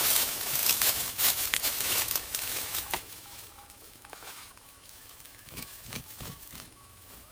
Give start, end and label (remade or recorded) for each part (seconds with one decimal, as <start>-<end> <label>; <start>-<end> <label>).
0.0-7.3 remade